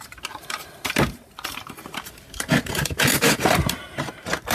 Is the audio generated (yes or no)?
yes